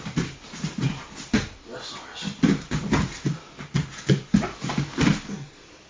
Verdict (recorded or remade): recorded